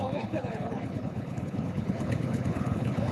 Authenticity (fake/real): fake